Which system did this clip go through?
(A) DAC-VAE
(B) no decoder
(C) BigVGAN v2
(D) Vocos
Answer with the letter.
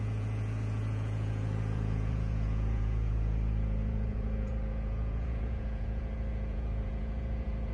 D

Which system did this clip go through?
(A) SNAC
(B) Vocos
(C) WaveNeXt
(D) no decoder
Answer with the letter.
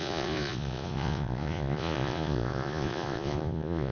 B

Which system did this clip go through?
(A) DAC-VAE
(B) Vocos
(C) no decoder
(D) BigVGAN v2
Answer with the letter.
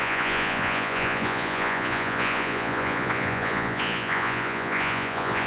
B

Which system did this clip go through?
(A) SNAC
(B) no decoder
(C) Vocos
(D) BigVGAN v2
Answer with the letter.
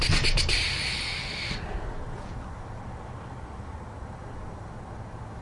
B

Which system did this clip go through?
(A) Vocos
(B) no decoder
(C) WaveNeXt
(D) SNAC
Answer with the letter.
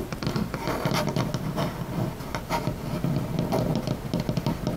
B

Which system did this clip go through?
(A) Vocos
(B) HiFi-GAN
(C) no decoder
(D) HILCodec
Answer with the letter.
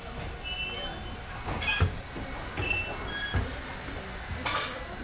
C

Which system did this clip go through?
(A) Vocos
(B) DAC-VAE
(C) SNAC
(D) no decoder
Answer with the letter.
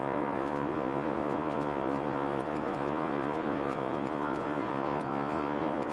A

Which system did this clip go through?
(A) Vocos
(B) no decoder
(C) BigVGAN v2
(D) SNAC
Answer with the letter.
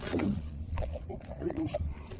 A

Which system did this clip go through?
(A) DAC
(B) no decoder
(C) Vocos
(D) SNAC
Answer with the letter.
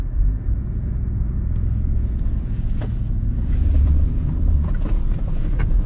C